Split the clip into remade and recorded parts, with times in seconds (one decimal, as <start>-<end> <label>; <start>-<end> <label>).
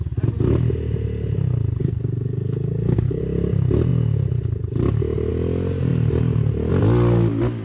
0.0-1.8 recorded; 1.8-3.2 remade; 3.2-7.6 recorded